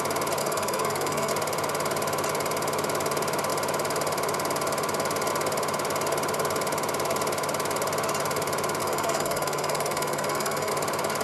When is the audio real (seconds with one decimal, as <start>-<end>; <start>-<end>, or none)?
0.0-0.4; 1.3-8.8; 10.7-11.2